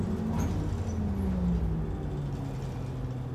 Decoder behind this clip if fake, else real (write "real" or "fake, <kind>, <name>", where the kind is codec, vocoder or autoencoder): real